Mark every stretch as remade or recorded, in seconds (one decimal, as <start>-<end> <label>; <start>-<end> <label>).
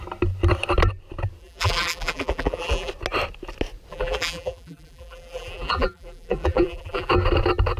0.0-1.4 recorded; 1.4-2.9 remade; 2.9-3.9 recorded; 3.9-7.1 remade; 7.1-7.8 recorded